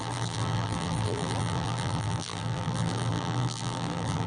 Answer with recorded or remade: remade